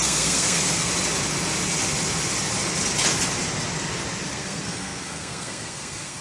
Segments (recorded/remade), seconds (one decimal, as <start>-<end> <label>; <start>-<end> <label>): 0.0-0.9 remade; 0.9-4.3 recorded; 4.3-6.2 remade